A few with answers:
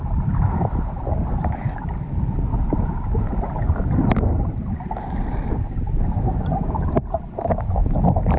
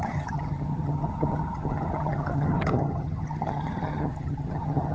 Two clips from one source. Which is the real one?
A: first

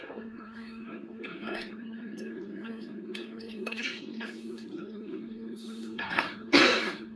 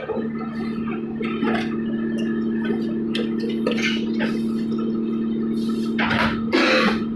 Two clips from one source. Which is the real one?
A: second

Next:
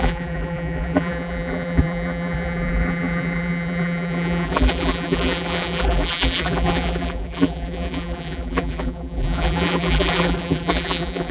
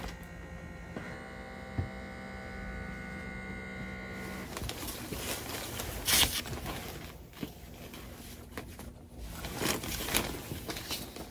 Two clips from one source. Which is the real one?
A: second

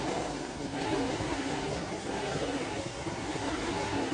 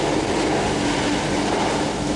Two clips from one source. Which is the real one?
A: second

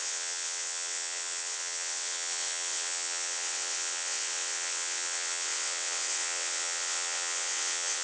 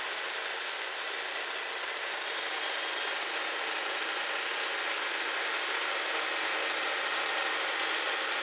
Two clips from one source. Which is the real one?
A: second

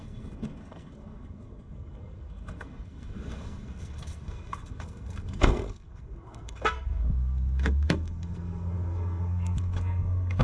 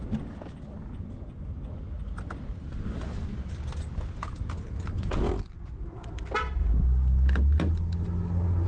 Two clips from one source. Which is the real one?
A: second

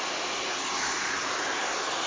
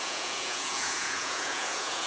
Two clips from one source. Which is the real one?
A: first